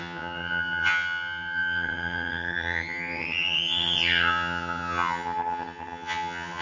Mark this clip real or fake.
fake